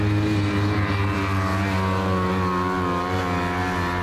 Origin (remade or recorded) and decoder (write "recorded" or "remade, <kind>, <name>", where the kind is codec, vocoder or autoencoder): recorded